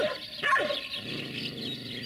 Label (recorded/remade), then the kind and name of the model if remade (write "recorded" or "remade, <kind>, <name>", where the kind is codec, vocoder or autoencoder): recorded